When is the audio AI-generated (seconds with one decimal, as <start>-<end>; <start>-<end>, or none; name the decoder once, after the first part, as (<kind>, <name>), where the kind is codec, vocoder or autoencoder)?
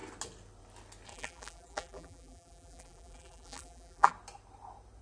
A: 1.1-4.1 (vocoder, BigVGAN v2)